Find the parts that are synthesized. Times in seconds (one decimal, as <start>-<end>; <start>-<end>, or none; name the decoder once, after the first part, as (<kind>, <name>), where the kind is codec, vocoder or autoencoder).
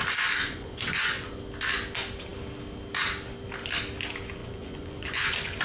0.4-1.4 (vocoder, Vocos); 4.4-5.6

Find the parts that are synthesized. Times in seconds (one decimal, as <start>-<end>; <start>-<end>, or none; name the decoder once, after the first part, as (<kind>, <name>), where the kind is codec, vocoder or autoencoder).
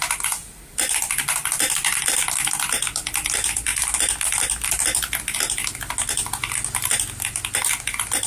none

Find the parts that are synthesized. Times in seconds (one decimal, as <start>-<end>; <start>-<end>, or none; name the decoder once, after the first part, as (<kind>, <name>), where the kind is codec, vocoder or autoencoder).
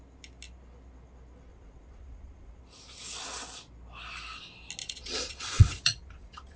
1.5-2.6 (vocoder, Vocos); 4.8-6.6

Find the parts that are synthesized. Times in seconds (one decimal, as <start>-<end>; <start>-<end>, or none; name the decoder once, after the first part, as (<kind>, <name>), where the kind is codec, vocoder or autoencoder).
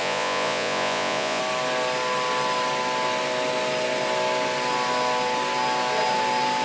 0.0-1.4 (vocoder, Vocos)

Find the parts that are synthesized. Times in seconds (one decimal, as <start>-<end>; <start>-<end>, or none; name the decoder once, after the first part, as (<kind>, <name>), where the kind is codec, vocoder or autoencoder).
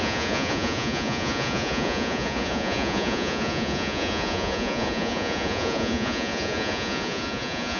0.0-7.8 (vocoder, Vocos)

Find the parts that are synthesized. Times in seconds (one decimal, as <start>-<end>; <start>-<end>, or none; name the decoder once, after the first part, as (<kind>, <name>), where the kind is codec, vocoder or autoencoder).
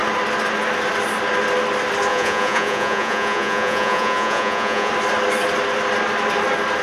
2.1-4.9 (vocoder, Vocos)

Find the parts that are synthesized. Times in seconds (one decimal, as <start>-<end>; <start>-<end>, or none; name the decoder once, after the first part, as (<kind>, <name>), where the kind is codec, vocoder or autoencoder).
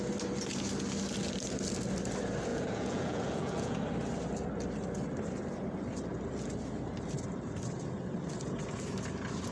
2.5-3.8 (vocoder, Vocos)